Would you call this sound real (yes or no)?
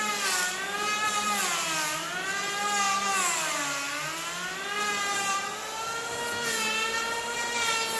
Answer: yes